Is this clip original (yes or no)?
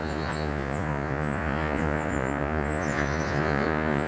no